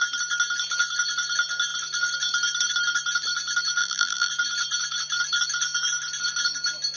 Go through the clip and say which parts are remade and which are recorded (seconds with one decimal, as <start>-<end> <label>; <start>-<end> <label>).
0.0-3.8 recorded; 3.8-4.3 remade; 4.3-7.0 recorded